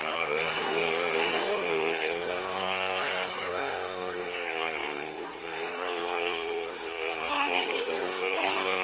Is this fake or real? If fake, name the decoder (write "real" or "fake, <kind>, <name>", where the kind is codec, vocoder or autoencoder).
fake, codec, SNAC